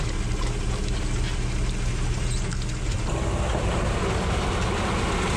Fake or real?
real